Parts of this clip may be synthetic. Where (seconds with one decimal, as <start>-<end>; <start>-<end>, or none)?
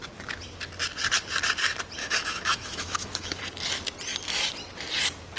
2.0-3.4